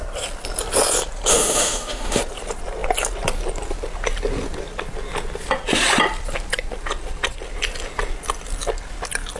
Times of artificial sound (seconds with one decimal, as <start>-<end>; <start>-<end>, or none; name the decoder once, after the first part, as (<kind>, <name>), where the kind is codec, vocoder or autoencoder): 1.3-2.2 (autoencoder, DAC-VAE)